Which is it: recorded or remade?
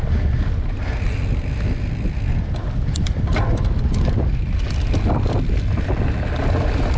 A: recorded